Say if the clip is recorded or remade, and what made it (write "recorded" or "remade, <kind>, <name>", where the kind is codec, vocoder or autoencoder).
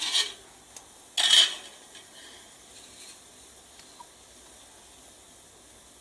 recorded